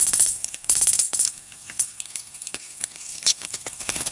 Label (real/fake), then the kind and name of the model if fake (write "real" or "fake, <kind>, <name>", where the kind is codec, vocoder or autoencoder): fake, codec, SNAC